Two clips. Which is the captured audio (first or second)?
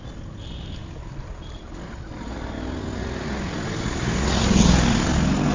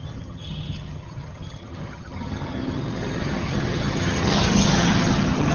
first